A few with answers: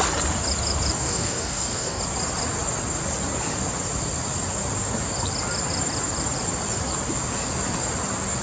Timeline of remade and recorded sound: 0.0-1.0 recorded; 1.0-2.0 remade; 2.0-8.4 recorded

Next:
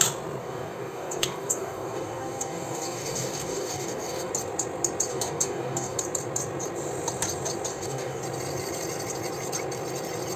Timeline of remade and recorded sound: 0.0-0.4 recorded; 0.4-4.3 remade; 4.3-5.1 recorded; 5.1-6.0 remade; 6.0-7.7 recorded; 7.7-8.2 remade; 8.2-10.4 recorded

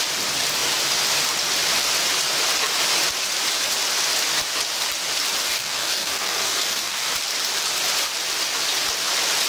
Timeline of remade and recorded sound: 0.0-5.4 recorded; 5.4-7.1 remade; 7.1-9.5 recorded

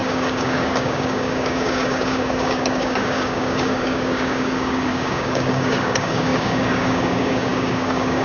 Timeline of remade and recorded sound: 0.0-8.2 remade